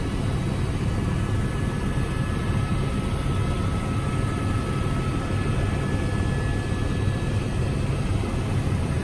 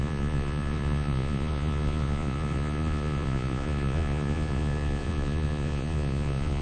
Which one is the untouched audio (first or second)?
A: first